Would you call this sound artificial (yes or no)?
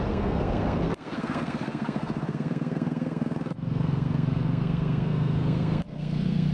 yes